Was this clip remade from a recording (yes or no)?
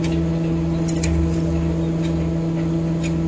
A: no